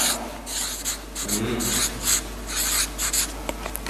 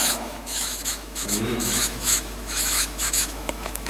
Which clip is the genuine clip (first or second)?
first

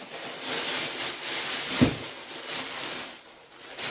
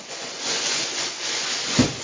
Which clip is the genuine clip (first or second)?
first